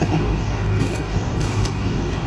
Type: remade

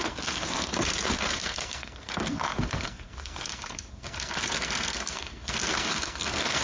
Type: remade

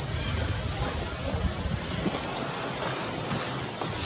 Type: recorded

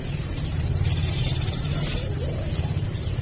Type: remade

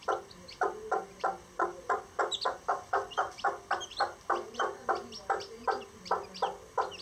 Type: recorded